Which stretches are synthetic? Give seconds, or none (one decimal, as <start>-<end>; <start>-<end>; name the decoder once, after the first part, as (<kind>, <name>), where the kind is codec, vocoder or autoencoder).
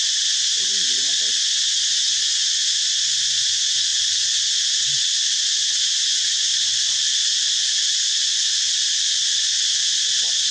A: 0.0-3.9 (vocoder, Vocos); 5.4-6.5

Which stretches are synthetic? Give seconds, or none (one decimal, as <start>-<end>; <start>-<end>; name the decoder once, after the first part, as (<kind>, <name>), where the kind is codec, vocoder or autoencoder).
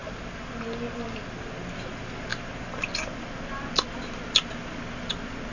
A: none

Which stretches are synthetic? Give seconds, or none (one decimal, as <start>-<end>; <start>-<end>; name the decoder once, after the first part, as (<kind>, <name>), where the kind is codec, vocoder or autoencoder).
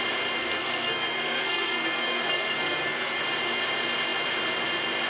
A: 0.4-3.2 (codec, SNAC)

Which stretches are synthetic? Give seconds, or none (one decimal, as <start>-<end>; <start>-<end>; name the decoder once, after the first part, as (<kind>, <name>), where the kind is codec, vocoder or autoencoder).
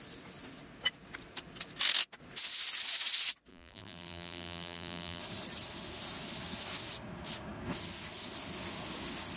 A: 3.5-5.2 (vocoder, BigVGAN v2)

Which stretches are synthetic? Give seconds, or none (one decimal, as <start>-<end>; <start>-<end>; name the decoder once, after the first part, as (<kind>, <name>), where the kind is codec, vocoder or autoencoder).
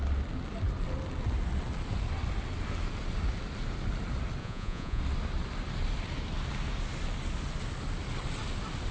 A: 4.4-5.0 (vocoder, Vocos)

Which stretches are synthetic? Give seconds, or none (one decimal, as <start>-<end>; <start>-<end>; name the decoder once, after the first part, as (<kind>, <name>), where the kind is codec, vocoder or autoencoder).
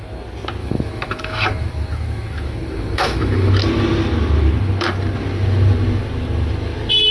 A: 0.6-3.5 (autoencoder, DAC-VAE)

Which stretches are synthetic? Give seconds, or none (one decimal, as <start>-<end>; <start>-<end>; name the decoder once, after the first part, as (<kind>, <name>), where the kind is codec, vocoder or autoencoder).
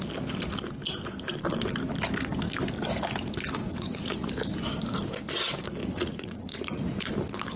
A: 3.6-4.3 (vocoder, Vocos); 5.8-7.1